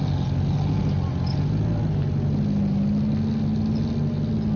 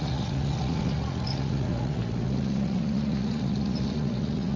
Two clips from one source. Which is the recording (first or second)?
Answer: first